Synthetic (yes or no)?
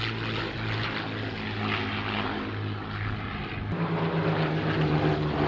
no